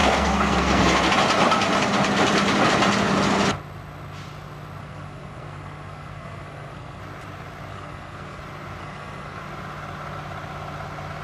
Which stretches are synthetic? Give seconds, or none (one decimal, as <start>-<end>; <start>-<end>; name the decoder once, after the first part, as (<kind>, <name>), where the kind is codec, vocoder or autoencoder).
0.0-1.1 (codec, SNAC); 4.8-7.0; 7.7-8.4; 8.8-9.4